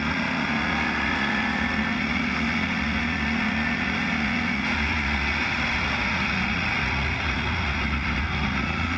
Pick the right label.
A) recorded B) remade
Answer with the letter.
B